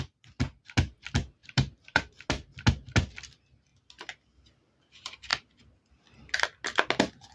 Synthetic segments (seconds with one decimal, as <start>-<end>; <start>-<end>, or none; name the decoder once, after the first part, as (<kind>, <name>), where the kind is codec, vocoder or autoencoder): 1.4-2.0 (vocoder, BigVGAN v2)

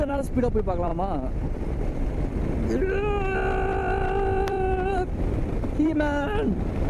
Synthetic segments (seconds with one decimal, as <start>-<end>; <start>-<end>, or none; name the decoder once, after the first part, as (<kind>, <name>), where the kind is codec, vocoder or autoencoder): 0.0-0.9 (vocoder, BigVGAN v2); 4.5-6.9

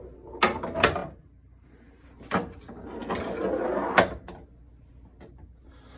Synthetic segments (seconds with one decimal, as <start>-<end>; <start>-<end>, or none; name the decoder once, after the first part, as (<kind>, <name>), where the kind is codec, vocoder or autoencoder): 1.0-2.0 (vocoder, BigVGAN v2)

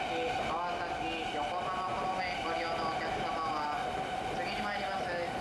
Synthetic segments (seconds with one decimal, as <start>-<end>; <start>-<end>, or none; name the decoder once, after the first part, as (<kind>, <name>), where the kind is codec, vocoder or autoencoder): none

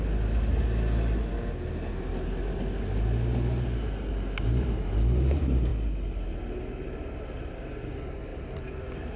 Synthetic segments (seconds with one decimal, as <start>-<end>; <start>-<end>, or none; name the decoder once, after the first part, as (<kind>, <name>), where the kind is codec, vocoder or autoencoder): 8.3-9.2 (vocoder, BigVGAN v2)

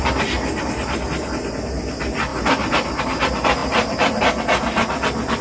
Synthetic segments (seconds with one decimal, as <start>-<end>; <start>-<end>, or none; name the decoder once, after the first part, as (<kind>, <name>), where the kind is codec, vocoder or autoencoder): 2.3-3.0 (vocoder, BigVGAN v2); 3.6-4.2

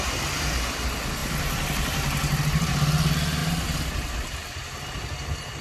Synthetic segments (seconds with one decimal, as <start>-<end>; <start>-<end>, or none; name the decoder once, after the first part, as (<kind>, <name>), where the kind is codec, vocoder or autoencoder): 1.2-2.4 (vocoder, BigVGAN v2); 3.4-5.6

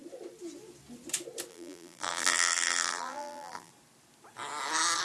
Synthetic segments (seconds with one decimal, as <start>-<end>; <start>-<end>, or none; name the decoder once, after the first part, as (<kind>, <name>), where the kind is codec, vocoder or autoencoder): 1.5-3.7 (vocoder, BigVGAN v2)